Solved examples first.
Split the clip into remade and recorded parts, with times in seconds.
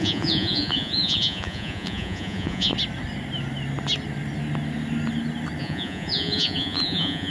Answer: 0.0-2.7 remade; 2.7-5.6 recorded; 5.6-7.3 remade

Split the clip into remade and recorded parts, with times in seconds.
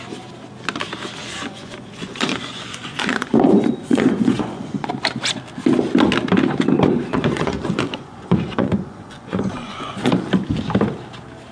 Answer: 0.0-1.2 recorded; 1.2-4.9 remade; 4.9-6.9 recorded; 6.9-10.1 remade; 10.1-11.5 recorded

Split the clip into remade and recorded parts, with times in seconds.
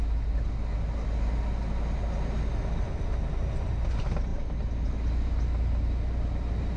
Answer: 0.0-6.8 recorded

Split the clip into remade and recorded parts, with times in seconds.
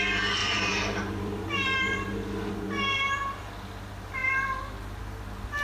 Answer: 0.0-0.4 recorded; 0.4-2.5 remade; 2.5-5.6 recorded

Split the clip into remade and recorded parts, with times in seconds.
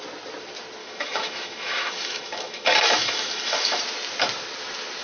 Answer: 0.0-0.8 recorded; 0.8-3.8 remade; 3.8-5.0 recorded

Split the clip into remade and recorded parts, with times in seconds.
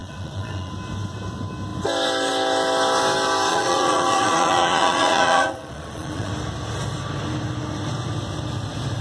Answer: 0.0-0.7 remade; 0.7-3.5 recorded; 3.5-6.3 remade; 6.3-9.0 recorded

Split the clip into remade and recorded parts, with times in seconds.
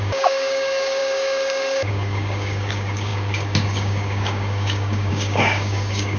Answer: 0.0-6.2 remade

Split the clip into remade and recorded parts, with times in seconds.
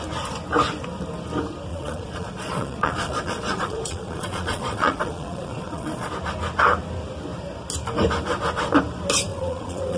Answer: 0.0-1.7 recorded; 1.7-6.1 remade; 6.1-9.3 recorded; 9.3-10.0 remade